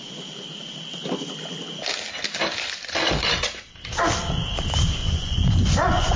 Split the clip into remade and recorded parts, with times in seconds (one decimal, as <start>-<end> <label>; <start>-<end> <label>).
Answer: 0.0-5.0 recorded; 5.0-6.2 remade